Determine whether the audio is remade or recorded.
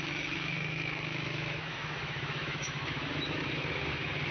remade